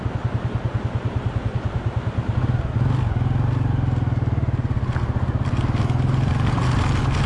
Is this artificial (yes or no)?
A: no